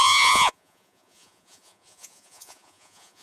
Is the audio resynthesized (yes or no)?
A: yes